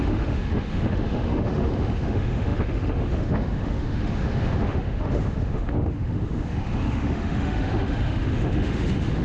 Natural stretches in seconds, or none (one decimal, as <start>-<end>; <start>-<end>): none